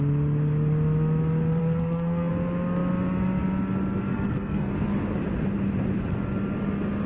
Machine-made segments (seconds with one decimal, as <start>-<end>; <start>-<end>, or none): 1.6-2.3; 4.1-4.7